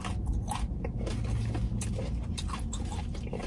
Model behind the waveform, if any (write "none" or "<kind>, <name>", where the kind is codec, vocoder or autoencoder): none